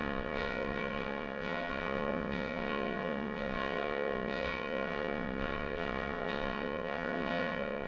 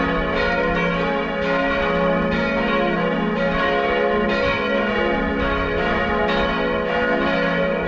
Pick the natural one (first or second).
second